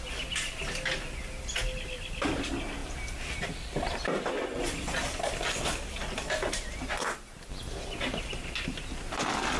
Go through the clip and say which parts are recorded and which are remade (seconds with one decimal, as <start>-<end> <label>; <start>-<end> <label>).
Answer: 0.0-2.8 recorded; 2.8-6.6 remade; 6.6-9.6 recorded